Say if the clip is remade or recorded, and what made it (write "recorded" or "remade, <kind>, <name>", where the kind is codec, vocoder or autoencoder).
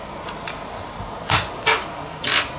recorded